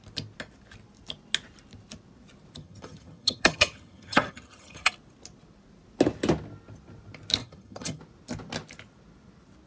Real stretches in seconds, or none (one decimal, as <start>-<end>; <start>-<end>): 0.0-2.6; 4.9-7.4; 8.0-9.7